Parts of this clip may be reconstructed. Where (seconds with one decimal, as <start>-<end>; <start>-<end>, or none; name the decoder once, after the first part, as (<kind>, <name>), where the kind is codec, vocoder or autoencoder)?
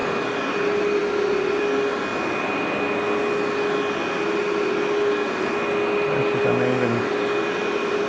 none